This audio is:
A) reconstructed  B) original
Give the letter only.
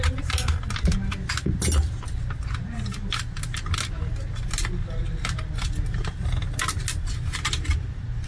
B